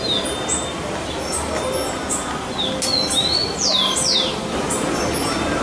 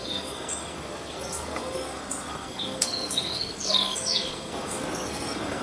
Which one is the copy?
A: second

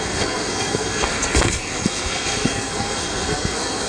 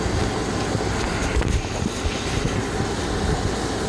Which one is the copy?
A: first